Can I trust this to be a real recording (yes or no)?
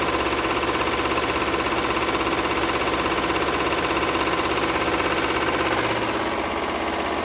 yes